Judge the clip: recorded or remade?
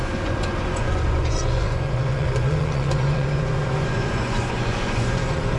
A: remade